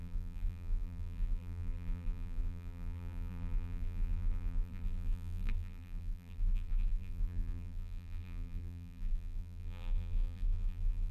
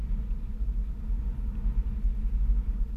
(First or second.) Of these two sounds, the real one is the second